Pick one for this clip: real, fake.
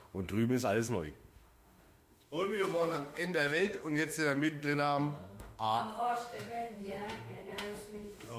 fake